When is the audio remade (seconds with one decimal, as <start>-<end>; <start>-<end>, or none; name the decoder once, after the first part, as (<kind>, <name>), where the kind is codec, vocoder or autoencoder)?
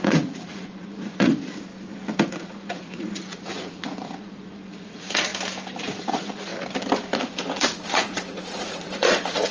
0.0-1.7 (vocoder, Vocos); 2.3-5.3; 5.9-6.5; 7.1-9.5